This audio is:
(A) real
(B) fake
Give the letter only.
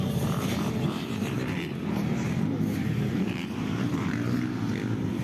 B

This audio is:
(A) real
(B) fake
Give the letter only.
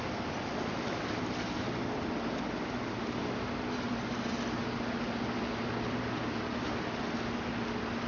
A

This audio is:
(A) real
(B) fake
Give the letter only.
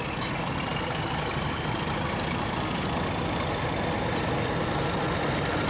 A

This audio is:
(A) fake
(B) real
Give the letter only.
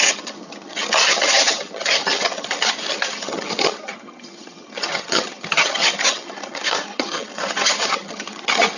A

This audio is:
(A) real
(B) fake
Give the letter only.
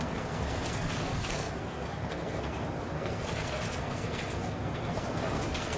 B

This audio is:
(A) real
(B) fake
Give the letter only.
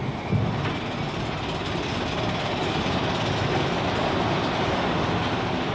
A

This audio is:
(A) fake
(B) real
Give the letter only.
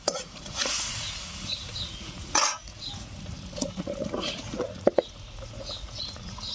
A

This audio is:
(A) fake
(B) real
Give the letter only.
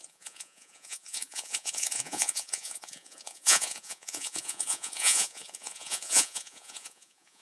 A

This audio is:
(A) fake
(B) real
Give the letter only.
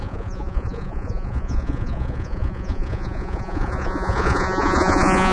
A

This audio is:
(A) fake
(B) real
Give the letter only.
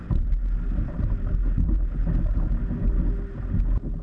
B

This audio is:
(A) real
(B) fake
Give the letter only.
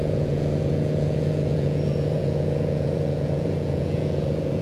B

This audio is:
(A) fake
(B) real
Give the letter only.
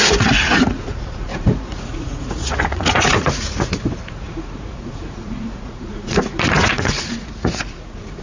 A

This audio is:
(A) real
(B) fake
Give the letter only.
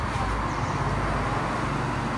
A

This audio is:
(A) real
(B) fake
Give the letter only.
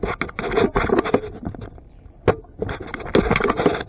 A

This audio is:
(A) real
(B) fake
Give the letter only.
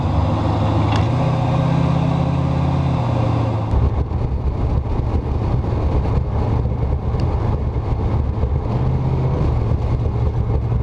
A